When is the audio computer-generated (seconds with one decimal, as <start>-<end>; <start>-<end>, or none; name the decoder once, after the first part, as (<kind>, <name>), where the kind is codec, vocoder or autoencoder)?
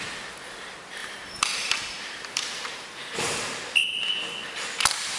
1.0-4.1 (vocoder, BigVGAN v2)